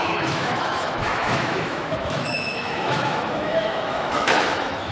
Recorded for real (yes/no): no